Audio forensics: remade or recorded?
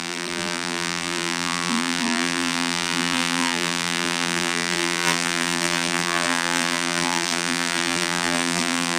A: remade